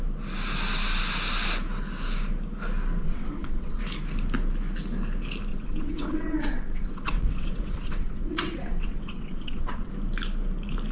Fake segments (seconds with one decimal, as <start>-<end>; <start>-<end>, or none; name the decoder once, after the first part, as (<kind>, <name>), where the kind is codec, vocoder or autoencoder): 3.0-3.8 (vocoder, WaveNeXt); 5.5-9.9